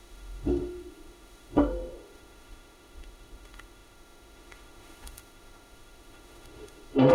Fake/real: fake